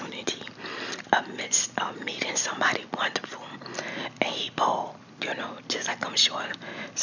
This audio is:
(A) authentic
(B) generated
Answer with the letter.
A